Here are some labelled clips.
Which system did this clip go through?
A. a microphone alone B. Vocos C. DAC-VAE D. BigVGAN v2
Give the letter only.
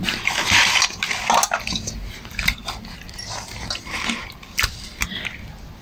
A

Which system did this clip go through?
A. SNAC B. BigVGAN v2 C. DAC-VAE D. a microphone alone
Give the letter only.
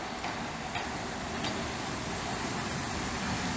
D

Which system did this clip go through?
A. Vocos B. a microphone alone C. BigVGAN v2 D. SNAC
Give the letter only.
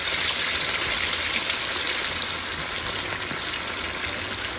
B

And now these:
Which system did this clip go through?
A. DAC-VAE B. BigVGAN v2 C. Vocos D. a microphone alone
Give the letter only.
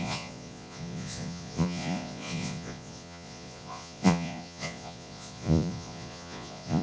C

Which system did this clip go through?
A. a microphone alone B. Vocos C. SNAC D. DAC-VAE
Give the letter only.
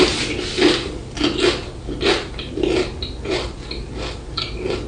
A